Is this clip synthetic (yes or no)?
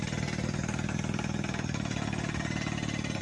no